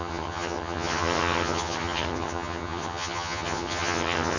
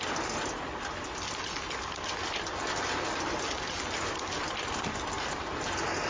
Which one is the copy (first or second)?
first